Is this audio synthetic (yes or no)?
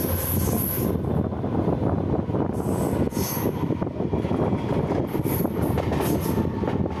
no